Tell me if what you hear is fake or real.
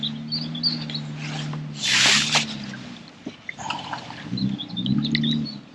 real